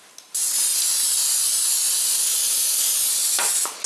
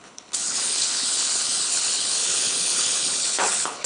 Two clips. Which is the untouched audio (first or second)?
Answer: first